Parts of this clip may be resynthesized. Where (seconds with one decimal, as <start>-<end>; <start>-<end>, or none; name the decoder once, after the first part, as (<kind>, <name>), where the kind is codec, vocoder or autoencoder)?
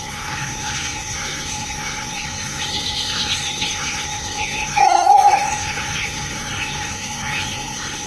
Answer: 0.0-8.1 (codec, SNAC)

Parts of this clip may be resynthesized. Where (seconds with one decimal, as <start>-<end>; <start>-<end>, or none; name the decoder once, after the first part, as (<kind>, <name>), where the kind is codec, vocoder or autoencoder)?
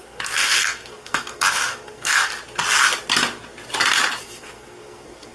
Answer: 0.0-2.3 (codec, SNAC); 4.2-5.3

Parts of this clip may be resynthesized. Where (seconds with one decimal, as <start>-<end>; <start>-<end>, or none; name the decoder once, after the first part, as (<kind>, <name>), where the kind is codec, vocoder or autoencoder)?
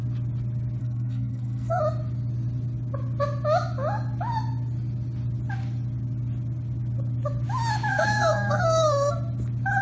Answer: 0.8-1.8 (codec, SNAC); 7.9-9.1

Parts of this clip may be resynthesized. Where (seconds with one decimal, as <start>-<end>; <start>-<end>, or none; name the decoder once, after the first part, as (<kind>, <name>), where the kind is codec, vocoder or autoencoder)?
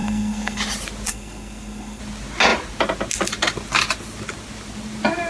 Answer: 0.0-0.6 (codec, SNAC); 1.1-2.0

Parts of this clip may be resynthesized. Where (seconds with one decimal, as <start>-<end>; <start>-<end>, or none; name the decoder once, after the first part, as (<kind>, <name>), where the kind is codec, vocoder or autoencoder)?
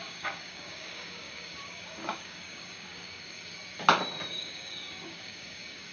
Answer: 0.0-3.5 (codec, DAC); 4.3-5.9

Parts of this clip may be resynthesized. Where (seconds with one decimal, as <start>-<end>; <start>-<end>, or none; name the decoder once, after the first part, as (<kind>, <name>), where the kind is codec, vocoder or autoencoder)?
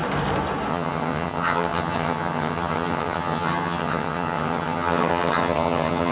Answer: 0.7-6.1 (vocoder, HiFi-GAN)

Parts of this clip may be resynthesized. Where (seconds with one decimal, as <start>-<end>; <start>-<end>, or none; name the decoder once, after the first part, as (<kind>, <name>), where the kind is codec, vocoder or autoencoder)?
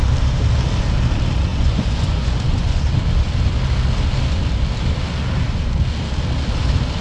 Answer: 1.5-2.9 (vocoder, Vocos)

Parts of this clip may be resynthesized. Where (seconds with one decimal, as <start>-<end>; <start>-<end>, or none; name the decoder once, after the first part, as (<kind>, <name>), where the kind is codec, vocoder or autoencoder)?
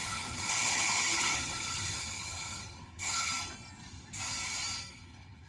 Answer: 0.0-3.3 (codec, HILCodec); 4.9-5.5